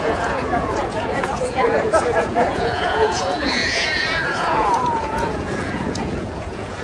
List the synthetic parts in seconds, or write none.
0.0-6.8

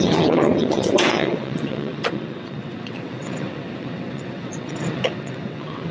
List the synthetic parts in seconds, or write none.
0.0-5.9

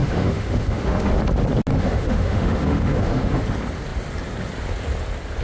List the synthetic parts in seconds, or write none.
0.0-1.1; 1.7-3.4

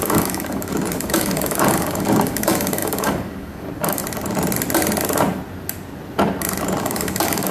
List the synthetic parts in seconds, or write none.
0.0-4.0; 6.8-7.5